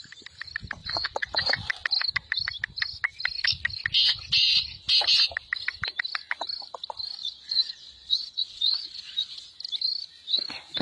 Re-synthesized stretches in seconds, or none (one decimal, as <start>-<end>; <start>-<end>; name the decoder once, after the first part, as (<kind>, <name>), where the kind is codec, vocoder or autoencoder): 0.8-1.4 (vocoder, Vocos); 7.2-9.5